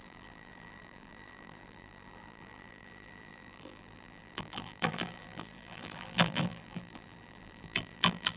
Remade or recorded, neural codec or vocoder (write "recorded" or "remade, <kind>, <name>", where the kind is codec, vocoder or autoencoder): remade, vocoder, BigVGAN v2